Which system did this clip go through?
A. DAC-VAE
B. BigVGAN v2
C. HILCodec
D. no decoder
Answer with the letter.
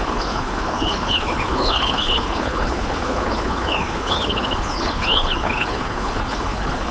C